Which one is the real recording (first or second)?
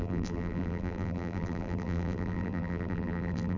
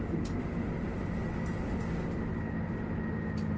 second